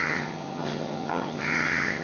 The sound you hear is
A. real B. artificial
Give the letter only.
B